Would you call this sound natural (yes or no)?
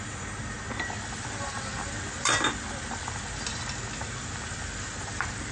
yes